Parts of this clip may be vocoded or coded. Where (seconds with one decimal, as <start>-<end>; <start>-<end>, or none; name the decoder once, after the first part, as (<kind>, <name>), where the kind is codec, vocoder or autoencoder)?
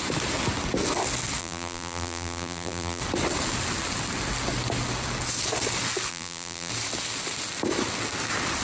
1.4-3.0 (vocoder, BigVGAN v2); 6.1-6.7